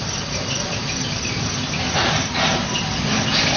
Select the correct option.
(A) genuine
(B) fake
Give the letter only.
A